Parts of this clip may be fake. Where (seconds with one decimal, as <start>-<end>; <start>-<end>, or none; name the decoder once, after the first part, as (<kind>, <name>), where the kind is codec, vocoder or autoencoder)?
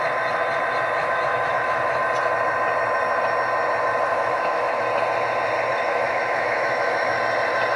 1.0-2.0 (autoencoder, DAC-VAE); 4.1-4.8; 5.7-7.2